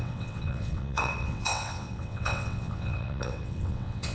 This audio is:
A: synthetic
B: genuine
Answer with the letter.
A